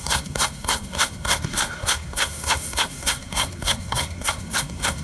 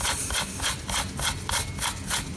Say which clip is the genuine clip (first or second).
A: second